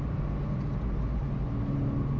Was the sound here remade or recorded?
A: recorded